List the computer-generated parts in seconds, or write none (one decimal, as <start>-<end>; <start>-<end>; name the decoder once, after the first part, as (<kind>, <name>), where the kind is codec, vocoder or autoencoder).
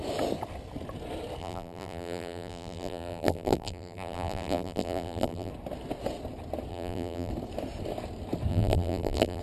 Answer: 1.4-5.5 (vocoder, BigVGAN v2); 6.7-7.3; 8.5-9.4